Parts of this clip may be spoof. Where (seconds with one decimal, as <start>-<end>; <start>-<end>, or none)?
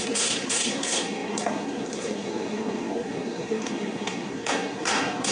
0.0-5.3